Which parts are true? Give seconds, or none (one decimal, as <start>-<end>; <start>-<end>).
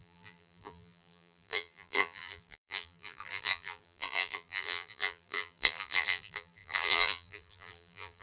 none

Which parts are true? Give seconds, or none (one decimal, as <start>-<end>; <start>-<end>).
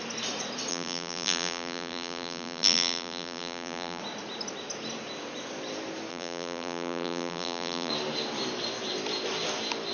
0.0-0.7; 4.0-6.1; 7.9-9.9